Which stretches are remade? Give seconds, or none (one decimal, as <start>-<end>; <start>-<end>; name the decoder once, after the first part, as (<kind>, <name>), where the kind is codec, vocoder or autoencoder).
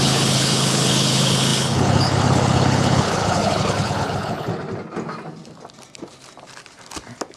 0.0-4.5 (codec, HILCodec)